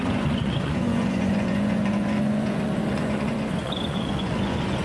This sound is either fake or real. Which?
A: fake